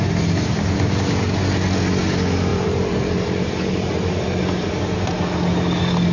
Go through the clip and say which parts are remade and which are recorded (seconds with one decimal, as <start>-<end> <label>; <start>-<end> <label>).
0.0-2.5 recorded; 2.5-4.4 remade; 4.4-6.1 recorded